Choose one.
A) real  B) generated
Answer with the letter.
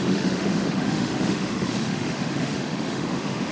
B